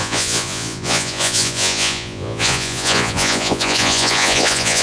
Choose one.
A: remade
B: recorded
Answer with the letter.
A